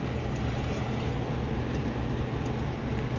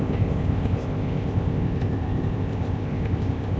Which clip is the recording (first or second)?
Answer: first